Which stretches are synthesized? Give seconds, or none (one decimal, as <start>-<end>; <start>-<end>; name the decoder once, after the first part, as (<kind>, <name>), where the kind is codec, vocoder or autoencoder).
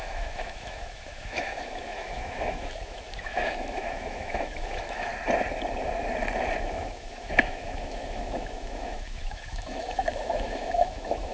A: 0.0-5.1 (autoencoder, DAC-VAE); 6.6-11.3